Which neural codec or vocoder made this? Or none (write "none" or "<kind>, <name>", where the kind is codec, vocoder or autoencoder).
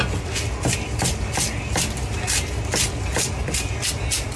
none